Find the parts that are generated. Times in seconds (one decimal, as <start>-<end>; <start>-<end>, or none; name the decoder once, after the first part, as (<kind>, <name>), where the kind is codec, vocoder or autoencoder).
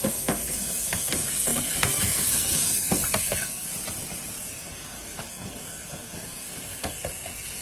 0.0-3.7 (codec, SNAC); 4.4-7.6